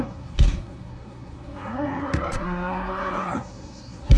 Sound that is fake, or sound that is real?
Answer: fake